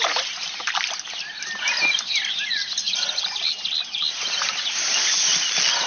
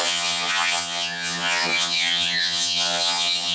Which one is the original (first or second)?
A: first